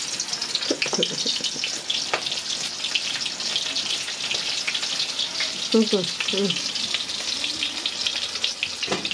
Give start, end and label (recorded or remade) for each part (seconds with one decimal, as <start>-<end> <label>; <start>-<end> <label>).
0.0-9.1 recorded